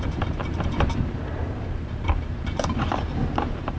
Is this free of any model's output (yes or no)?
no